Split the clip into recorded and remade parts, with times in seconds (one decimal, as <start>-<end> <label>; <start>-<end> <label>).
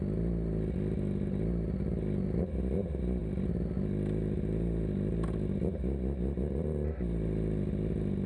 0.0-8.3 recorded